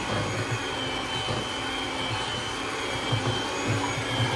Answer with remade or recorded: recorded